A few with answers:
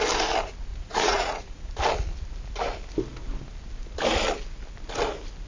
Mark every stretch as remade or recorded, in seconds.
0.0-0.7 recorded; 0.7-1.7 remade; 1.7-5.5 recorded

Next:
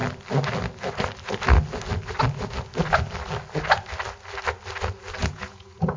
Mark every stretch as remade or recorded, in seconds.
0.0-5.2 recorded; 5.2-6.0 remade

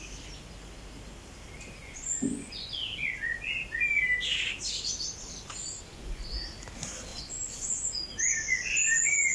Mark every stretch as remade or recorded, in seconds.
0.0-1.8 recorded; 1.8-3.3 remade; 3.3-5.9 recorded; 5.9-6.4 remade; 6.4-7.1 recorded; 7.1-8.0 remade; 8.0-9.3 recorded

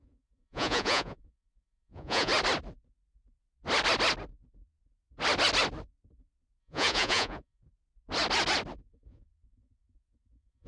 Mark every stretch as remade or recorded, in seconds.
0.0-2.3 remade; 2.3-6.6 recorded; 6.6-7.6 remade; 7.6-8.9 recorded; 8.9-10.7 remade